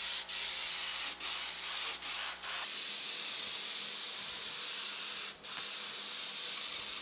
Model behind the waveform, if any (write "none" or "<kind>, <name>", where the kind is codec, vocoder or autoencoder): none